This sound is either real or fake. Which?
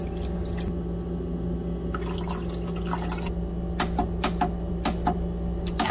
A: real